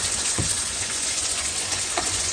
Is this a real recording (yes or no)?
no